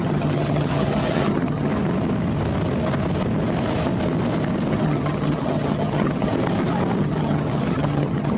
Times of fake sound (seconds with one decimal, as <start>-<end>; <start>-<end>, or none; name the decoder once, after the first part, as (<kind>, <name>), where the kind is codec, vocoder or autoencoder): 0.0-1.7 (vocoder, HiFi-GAN); 4.7-6.3; 7.0-8.4